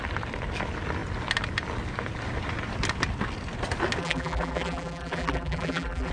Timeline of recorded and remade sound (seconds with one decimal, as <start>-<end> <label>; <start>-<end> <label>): 0.0-4.0 recorded; 4.0-6.1 remade

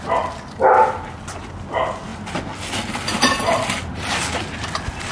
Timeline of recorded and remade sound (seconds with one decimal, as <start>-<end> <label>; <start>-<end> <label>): 0.0-5.1 recorded

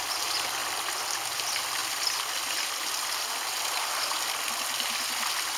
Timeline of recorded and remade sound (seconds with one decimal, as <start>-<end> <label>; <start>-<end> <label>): 0.0-5.6 recorded